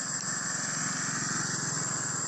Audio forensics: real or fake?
real